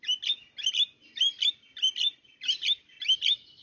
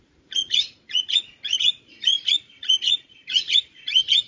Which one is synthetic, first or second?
second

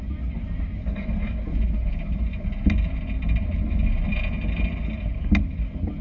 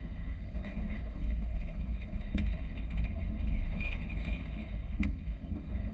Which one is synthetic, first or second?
second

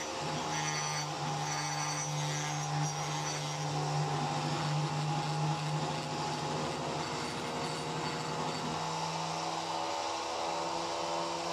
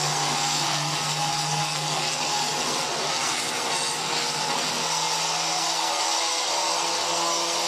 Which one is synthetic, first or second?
second